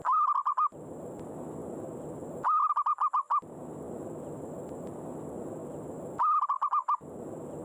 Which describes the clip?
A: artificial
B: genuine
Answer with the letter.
B